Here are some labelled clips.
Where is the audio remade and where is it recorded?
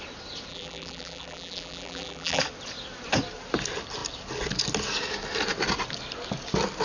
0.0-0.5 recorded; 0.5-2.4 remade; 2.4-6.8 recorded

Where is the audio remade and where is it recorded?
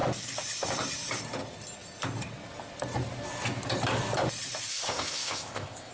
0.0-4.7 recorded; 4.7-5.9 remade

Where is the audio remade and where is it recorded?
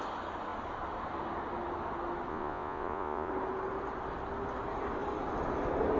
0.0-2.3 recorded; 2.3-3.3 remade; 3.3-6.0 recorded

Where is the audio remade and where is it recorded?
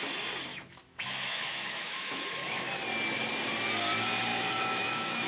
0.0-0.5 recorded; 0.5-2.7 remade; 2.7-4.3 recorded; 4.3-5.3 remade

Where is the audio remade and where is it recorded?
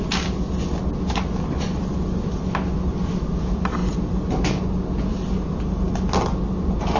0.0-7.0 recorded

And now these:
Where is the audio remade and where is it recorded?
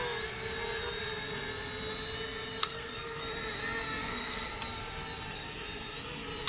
0.0-2.6 recorded; 2.6-3.2 remade; 3.2-4.0 recorded; 4.0-4.5 remade; 4.5-6.5 recorded